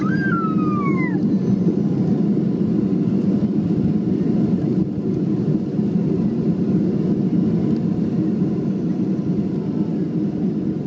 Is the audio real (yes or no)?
yes